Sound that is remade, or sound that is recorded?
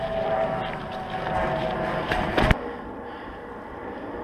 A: recorded